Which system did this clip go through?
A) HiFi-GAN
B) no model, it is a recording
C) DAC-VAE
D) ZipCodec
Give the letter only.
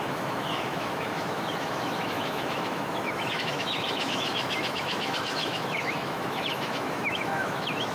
C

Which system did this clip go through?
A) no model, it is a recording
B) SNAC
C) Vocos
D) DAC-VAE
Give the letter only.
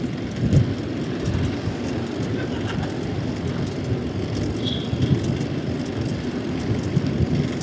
A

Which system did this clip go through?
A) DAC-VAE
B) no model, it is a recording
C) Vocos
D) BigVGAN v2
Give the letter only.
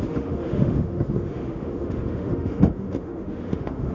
A